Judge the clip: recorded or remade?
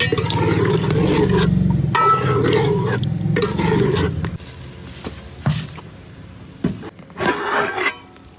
recorded